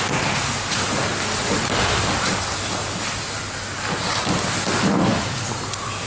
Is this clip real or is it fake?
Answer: real